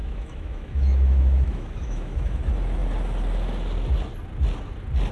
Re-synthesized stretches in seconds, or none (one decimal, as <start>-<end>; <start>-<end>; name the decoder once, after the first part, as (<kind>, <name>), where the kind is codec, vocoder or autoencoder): 0.0-2.4 (autoencoder, DAC-VAE)